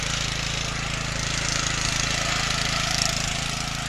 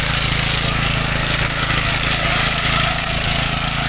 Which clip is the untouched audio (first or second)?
first